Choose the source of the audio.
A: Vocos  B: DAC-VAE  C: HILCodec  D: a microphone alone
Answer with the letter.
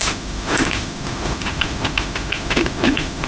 B